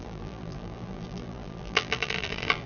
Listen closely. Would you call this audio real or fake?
fake